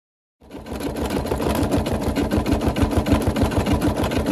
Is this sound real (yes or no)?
yes